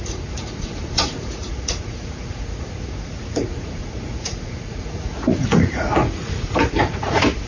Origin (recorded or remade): remade